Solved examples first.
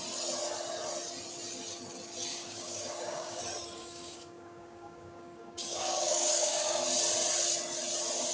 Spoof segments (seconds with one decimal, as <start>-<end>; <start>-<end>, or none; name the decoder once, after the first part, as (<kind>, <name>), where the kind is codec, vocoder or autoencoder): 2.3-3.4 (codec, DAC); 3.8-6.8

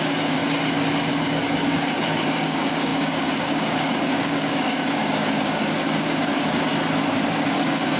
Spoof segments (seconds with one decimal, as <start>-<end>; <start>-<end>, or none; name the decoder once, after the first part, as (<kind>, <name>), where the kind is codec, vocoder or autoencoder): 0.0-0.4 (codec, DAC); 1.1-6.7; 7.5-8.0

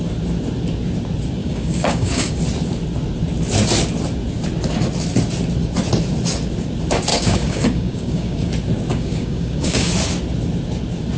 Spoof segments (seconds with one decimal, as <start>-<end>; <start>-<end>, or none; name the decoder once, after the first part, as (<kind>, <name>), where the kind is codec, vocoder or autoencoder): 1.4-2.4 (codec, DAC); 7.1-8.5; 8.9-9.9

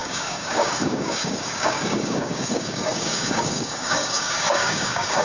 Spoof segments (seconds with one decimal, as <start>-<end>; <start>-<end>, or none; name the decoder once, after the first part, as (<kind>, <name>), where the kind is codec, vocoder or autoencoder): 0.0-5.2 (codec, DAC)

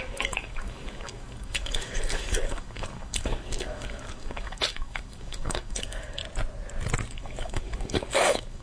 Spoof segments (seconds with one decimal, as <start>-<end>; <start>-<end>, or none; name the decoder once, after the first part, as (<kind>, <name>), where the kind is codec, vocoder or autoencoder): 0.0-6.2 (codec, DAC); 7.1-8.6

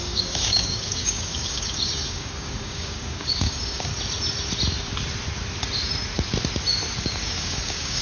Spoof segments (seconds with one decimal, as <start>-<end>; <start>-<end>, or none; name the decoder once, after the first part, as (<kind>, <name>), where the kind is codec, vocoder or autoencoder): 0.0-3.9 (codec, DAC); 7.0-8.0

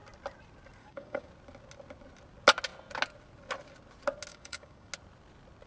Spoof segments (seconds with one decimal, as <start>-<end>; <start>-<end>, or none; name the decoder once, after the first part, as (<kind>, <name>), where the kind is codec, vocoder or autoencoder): 0.8-1.3 (codec, DAC); 4.3-4.9